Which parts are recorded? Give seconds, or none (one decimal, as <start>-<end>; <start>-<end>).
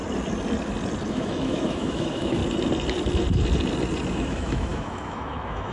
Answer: 0.0-1.1; 2.4-4.1